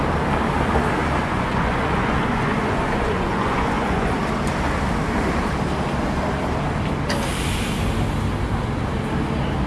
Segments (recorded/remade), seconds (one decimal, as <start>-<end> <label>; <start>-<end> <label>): 0.0-1.2 recorded; 1.2-4.2 remade; 4.2-9.7 recorded